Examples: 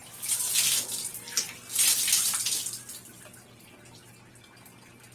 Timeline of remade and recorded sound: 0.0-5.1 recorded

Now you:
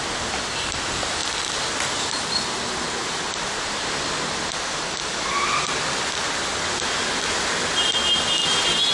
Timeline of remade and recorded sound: 0.0-8.9 recorded

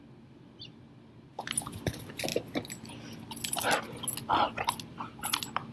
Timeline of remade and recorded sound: 0.0-5.7 recorded

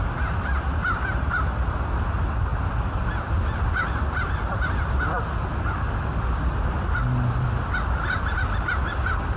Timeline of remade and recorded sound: 0.0-9.4 recorded

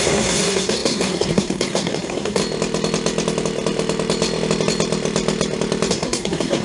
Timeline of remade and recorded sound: 0.0-2.4 remade; 2.4-5.9 recorded; 5.9-6.6 remade